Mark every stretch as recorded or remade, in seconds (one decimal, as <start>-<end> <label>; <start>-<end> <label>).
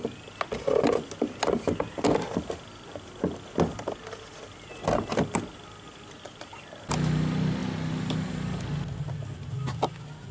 0.0-10.3 recorded